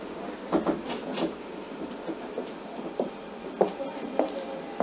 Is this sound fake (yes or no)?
no